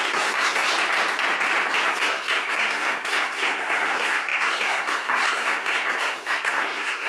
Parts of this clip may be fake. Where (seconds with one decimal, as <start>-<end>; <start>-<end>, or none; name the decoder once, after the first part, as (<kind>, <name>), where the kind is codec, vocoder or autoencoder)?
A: 0.0-0.7 (codec, SNAC); 1.9-7.1